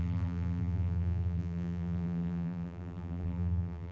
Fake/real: fake